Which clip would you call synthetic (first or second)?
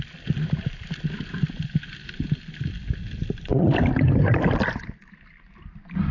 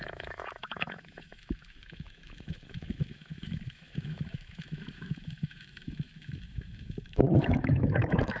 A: second